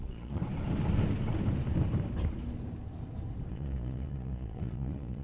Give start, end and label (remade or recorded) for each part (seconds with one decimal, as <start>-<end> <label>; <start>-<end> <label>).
0.0-0.4 remade; 0.4-3.5 recorded; 3.5-5.2 remade